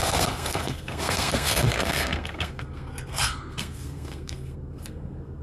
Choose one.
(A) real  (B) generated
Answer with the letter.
B